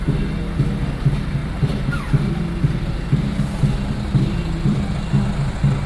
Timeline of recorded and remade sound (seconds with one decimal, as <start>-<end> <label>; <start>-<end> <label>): 0.0-1.4 recorded; 1.4-4.9 remade; 4.9-5.9 recorded

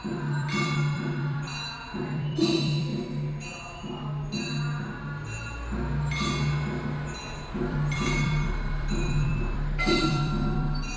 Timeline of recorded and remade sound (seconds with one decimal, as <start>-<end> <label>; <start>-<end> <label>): 0.0-1.5 remade; 1.5-2.0 recorded; 2.0-2.9 remade; 2.9-7.5 recorded; 7.5-11.0 remade

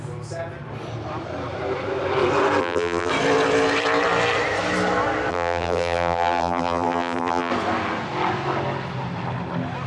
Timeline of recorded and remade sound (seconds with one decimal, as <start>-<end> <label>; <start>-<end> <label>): 0.0-2.6 recorded; 2.6-3.1 remade; 3.1-5.3 recorded; 5.3-7.5 remade; 7.5-9.9 recorded